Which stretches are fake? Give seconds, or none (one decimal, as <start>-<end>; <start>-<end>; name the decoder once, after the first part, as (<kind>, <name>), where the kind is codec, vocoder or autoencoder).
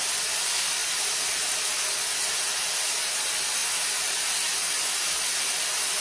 none